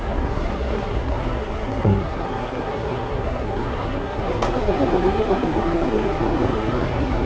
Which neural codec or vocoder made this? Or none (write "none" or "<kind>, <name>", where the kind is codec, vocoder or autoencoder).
codec, SNAC